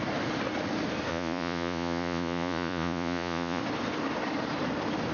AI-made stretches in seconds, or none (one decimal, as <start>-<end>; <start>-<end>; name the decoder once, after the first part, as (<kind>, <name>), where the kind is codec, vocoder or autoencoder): 1.1-3.6 (vocoder, Vocos)